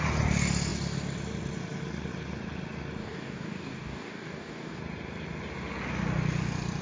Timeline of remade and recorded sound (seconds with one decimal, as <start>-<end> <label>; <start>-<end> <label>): 0.0-3.0 recorded; 3.0-4.8 remade; 4.8-6.8 recorded